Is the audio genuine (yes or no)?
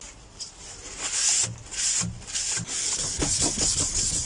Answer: yes